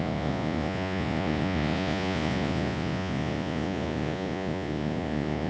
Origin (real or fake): fake